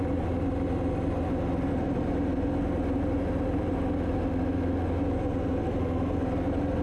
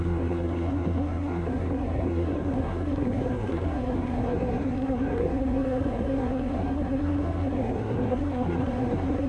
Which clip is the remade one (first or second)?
second